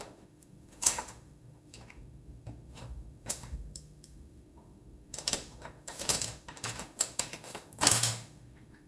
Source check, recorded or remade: remade